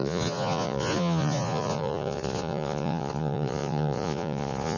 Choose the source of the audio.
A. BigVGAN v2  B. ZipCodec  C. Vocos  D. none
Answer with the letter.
C